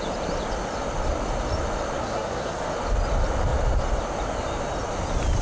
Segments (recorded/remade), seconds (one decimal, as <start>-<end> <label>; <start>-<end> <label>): 0.0-2.0 recorded; 2.0-2.6 remade; 2.6-5.4 recorded